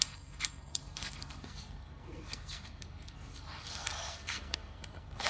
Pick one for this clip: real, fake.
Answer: fake